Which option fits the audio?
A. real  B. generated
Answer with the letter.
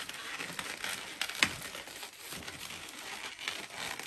A